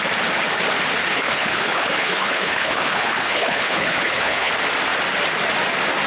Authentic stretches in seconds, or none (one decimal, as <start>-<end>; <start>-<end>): 0.0-1.1; 4.5-6.1